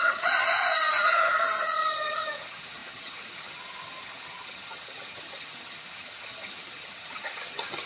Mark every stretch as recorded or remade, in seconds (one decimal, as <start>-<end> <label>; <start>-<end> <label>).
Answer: 0.0-7.9 remade